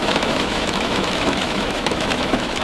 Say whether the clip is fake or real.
fake